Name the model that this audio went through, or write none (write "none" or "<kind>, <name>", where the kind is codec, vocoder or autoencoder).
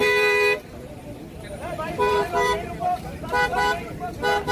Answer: vocoder, BigVGAN v2